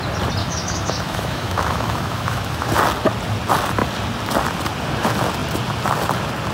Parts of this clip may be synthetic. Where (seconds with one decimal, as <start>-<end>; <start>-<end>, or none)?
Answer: 0.4-2.7